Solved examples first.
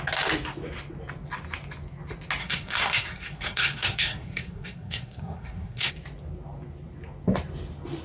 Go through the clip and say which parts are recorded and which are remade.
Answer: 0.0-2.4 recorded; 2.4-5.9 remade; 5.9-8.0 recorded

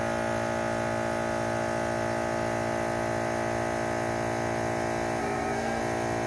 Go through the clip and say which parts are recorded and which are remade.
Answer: 0.0-5.2 recorded; 5.2-5.8 remade; 5.8-6.3 recorded